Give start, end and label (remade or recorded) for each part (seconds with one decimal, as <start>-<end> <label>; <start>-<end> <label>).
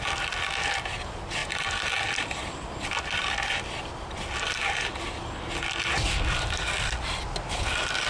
0.0-8.1 recorded